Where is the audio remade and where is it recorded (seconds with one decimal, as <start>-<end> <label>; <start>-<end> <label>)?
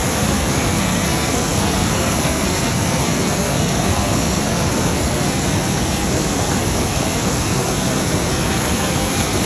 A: 0.0-9.5 remade